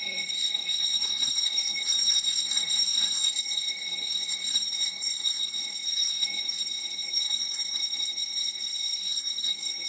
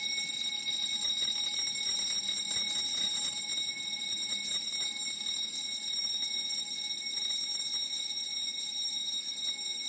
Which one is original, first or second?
second